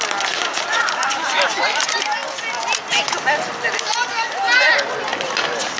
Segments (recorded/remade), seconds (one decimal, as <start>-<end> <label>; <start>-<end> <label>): 0.0-5.8 recorded